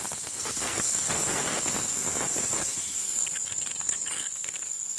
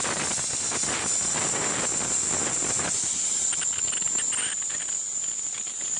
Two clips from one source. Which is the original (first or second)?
second